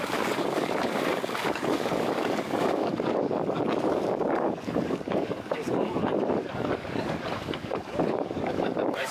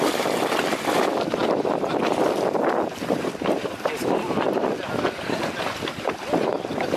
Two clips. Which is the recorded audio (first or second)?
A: second